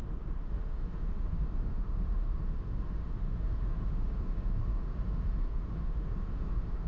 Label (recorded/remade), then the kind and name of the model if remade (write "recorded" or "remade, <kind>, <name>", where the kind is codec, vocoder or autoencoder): remade, autoencoder, DAC-VAE